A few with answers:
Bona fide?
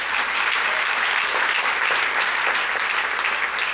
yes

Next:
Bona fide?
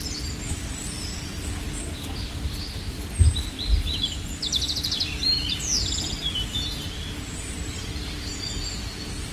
yes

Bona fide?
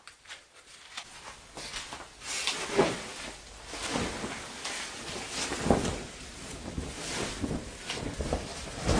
yes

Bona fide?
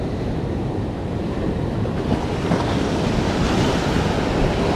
yes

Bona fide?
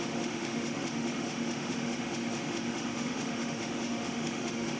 no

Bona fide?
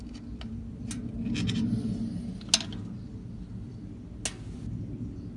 yes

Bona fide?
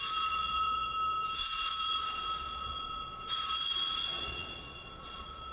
no